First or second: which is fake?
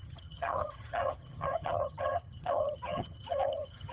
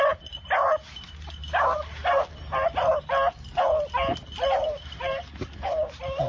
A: first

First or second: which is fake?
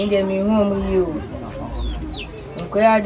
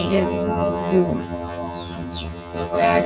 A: second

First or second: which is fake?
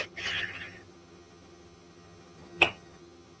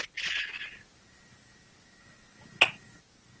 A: first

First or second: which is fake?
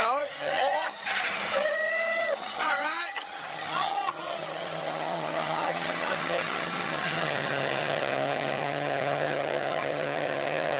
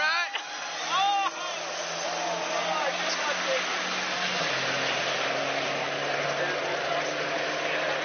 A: first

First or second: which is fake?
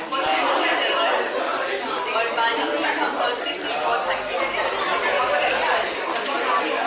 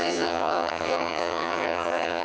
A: second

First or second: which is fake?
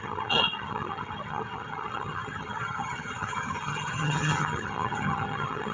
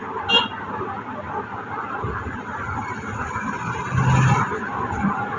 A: first